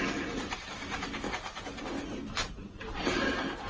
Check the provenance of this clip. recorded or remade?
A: recorded